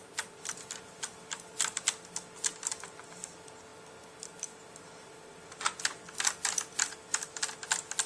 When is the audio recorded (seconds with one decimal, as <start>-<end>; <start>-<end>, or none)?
0.0-8.1